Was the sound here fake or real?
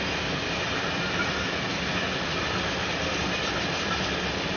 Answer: real